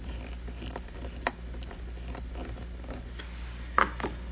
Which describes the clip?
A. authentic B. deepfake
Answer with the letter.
A